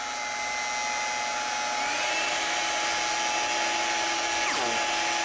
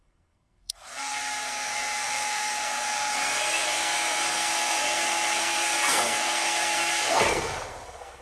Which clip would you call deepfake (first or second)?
second